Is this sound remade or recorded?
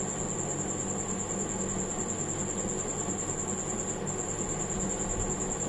recorded